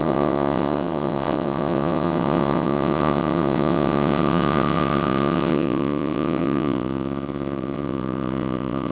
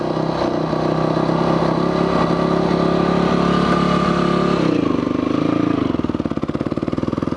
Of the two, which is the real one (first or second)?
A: second